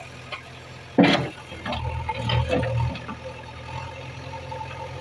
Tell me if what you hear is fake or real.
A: real